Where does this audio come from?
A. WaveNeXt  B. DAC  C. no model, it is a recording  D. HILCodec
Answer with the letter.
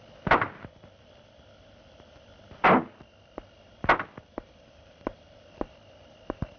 C